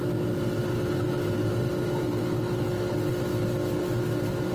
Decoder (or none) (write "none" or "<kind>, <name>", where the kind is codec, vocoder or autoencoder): none